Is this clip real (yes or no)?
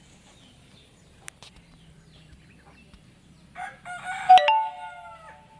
yes